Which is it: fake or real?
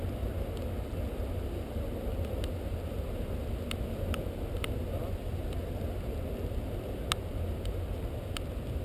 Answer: real